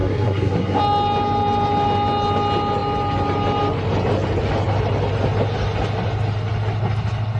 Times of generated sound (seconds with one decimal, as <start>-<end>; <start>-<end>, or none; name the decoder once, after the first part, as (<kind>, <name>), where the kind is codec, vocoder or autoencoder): 0.0-0.8 (codec, SNAC)